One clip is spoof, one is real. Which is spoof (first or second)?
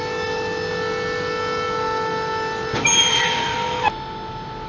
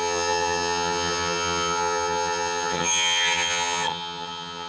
second